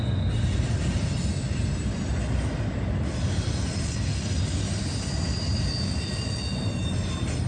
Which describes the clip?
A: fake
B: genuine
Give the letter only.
B